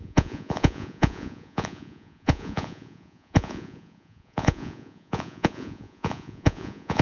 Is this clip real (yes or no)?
no